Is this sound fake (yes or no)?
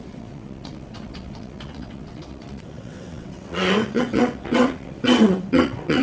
yes